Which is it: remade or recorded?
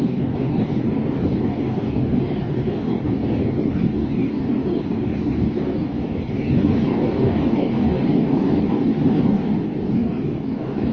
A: remade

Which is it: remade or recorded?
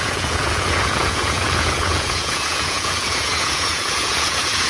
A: remade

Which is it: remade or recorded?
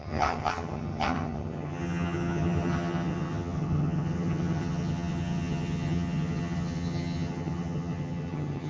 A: remade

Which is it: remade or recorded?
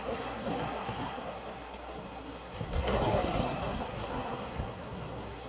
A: remade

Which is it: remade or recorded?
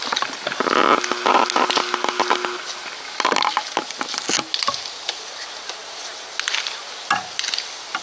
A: recorded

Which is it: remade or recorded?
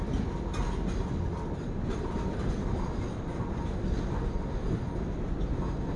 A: recorded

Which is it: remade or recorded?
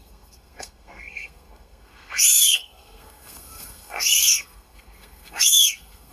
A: remade